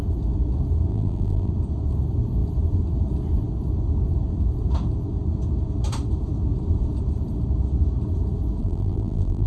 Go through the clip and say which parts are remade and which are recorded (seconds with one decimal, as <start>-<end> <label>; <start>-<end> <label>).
0.0-0.9 recorded; 0.9-1.5 remade; 1.5-8.6 recorded; 8.6-9.5 remade